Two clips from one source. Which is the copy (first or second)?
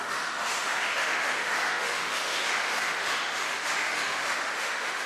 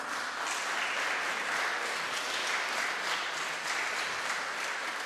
first